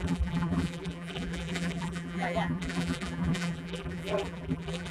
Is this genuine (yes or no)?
no